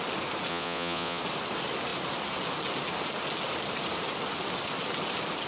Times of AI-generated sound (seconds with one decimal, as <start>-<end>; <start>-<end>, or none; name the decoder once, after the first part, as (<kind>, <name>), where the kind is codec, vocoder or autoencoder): 0.5-1.2 (vocoder, Vocos)